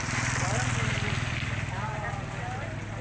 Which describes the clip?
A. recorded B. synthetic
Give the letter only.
A